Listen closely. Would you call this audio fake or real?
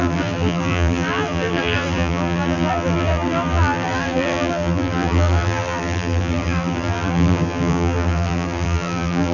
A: fake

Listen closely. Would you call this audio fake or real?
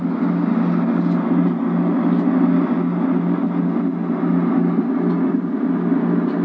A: real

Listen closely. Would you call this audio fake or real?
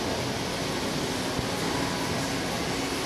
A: real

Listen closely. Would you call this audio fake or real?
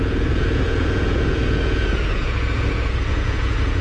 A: fake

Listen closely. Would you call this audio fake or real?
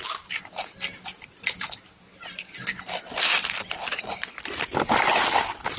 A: real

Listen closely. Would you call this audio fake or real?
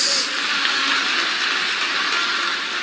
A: real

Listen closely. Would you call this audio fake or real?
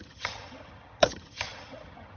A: fake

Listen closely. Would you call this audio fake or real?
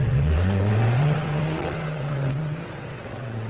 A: fake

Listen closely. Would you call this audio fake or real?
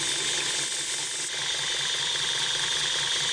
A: real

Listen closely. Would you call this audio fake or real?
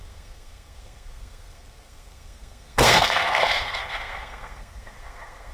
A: fake